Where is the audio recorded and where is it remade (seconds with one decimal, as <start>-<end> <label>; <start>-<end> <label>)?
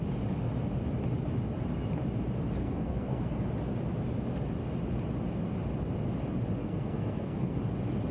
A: 0.0-2.6 recorded; 2.6-3.5 remade; 3.5-6.6 recorded; 6.6-7.6 remade; 7.6-8.1 recorded